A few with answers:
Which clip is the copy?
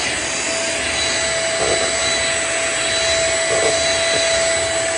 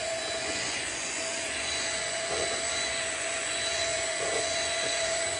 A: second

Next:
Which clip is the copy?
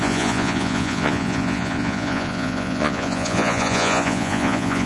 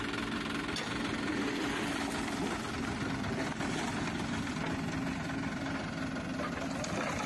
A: first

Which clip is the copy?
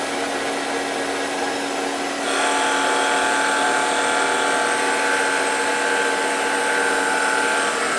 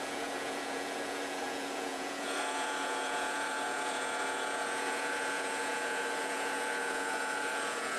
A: second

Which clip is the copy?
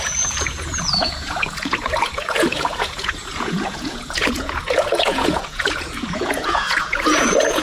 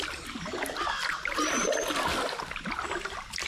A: first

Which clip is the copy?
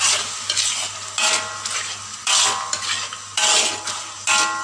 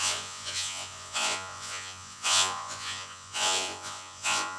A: second